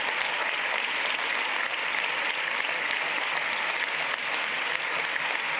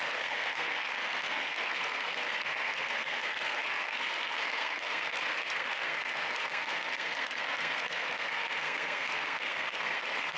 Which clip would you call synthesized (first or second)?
second